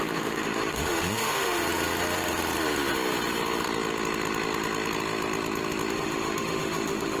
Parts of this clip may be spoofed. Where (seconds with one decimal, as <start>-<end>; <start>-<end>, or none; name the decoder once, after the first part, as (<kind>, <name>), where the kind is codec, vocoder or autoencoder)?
0.0-1.6 (autoencoder, DAC-VAE); 5.9-7.2